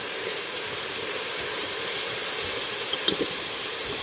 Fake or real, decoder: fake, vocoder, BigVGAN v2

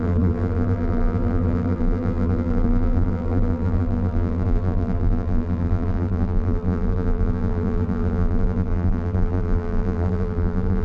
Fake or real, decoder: fake, vocoder, BigVGAN v2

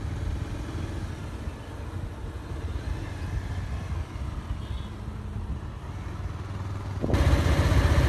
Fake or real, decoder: real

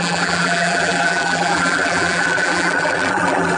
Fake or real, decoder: fake, vocoder, BigVGAN v2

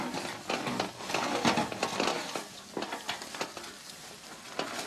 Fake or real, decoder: real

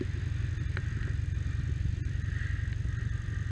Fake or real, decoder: real